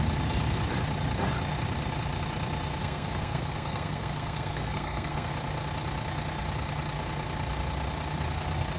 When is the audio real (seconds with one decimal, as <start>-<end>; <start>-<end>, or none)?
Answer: 0.0-2.8; 5.3-8.8